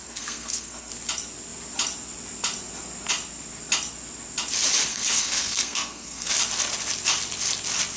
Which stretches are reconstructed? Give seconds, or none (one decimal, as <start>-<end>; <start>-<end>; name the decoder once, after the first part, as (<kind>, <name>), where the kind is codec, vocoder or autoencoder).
0.0-0.9 (codec, SNAC); 4.9-6.3